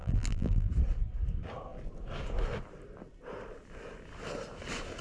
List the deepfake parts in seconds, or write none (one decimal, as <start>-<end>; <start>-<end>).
0.0-0.7